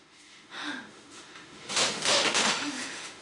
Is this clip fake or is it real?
fake